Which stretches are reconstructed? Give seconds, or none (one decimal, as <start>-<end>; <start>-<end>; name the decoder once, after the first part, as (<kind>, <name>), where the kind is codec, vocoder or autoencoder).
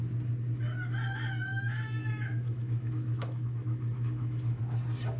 1.5-4.6 (autoencoder, DAC-VAE)